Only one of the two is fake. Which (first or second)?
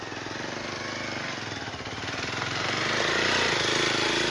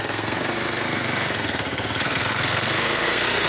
second